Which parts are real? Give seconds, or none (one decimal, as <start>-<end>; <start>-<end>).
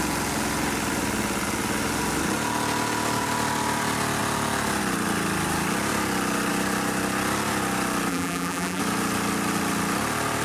0.0-8.1; 8.8-10.4